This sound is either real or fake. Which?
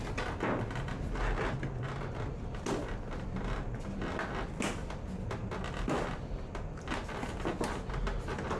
real